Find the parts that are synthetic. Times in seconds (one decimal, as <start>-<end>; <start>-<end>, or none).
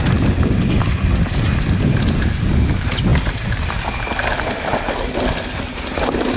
none